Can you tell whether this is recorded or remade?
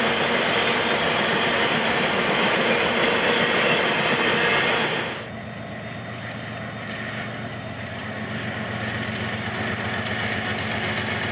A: recorded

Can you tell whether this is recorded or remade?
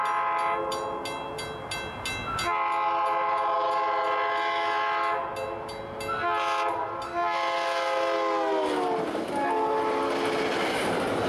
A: recorded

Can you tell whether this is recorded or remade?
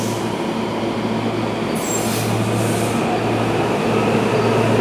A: recorded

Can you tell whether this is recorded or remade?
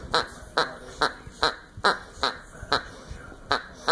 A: recorded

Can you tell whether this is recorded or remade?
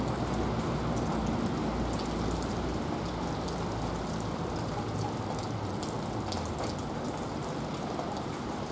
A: recorded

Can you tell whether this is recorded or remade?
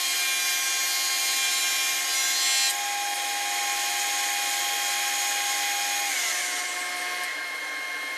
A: recorded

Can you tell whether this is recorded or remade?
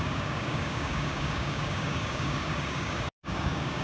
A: remade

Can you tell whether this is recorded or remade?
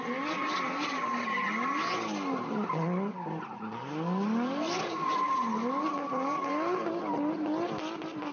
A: recorded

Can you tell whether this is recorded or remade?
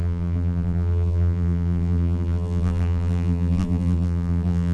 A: remade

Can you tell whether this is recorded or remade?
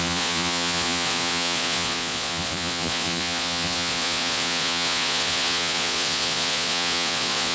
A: remade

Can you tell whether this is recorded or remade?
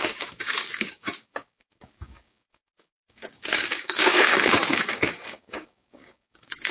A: remade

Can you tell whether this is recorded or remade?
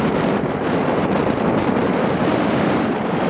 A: remade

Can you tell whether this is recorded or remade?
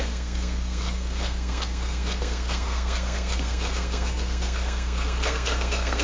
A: remade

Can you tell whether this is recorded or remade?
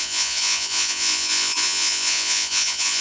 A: remade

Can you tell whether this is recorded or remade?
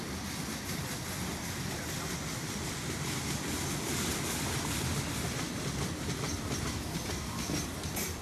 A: recorded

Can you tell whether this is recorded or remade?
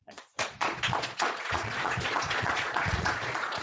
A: remade